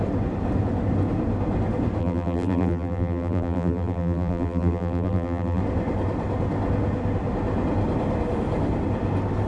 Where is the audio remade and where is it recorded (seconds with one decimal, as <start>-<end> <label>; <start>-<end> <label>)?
0.0-2.0 recorded; 2.0-5.6 remade; 5.6-9.5 recorded